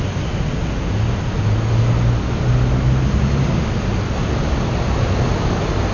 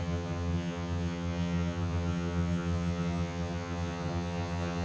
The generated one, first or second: second